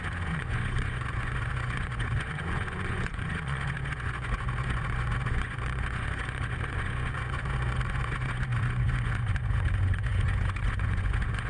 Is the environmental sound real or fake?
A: fake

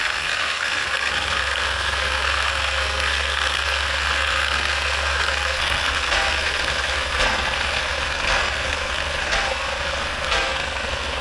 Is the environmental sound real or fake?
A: fake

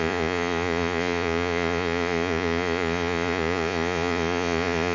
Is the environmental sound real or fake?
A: fake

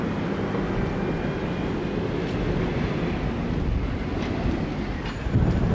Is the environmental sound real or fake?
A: real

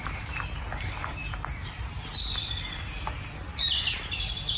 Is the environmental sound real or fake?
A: real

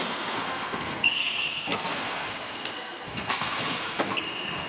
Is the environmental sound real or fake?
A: fake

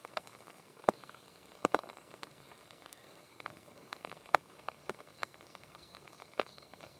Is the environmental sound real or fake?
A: fake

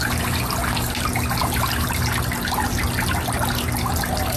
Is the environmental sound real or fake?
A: real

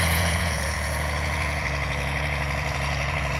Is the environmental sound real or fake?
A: fake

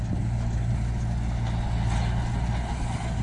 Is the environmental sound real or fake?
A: real